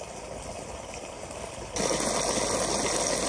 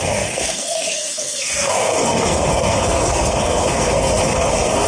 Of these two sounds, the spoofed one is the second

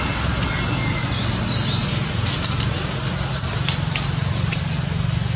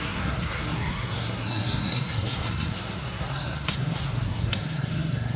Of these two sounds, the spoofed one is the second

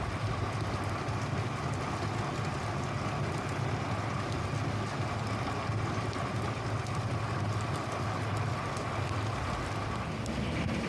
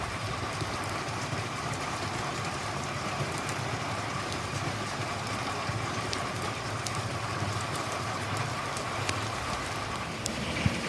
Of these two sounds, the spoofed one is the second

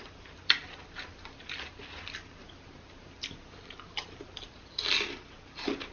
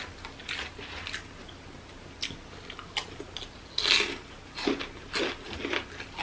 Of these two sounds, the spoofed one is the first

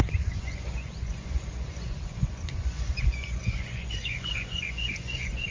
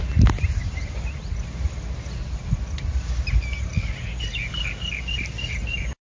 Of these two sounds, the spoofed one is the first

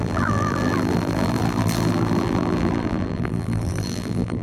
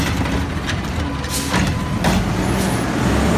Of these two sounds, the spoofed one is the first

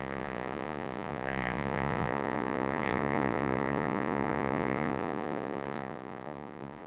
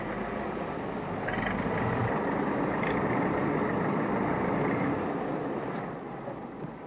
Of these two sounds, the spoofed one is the first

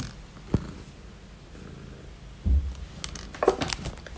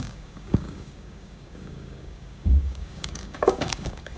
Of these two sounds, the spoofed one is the second